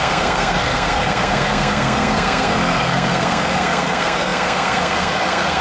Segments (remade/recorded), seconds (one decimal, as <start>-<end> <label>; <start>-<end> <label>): 0.0-5.6 remade